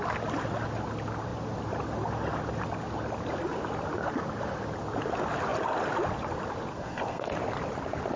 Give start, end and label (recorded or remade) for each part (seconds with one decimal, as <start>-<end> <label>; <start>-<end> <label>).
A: 0.0-6.7 recorded; 6.7-7.3 remade; 7.3-8.2 recorded